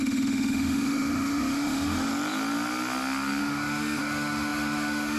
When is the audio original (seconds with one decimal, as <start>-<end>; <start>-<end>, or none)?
2.1-3.4